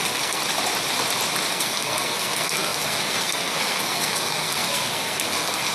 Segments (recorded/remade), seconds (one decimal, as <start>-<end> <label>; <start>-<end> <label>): 0.0-0.4 remade; 0.4-1.5 recorded; 1.5-5.7 remade